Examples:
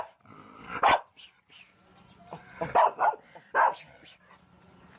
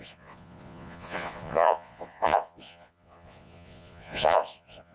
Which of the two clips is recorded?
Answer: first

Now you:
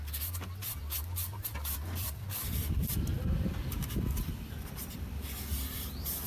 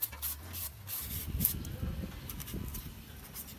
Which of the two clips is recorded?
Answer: second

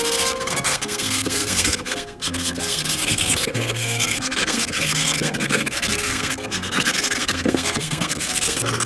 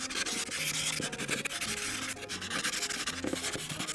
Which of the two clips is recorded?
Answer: second